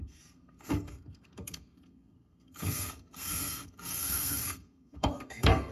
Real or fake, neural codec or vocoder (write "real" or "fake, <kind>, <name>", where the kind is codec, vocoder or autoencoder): fake, codec, SNAC